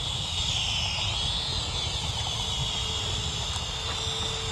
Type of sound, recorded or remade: recorded